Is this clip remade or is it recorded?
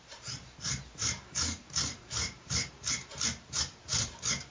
remade